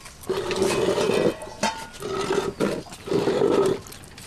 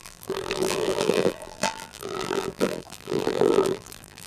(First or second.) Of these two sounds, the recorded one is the first